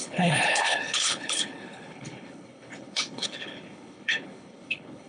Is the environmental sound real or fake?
fake